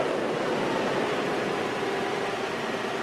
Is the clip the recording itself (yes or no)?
no